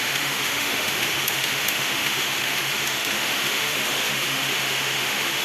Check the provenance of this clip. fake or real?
fake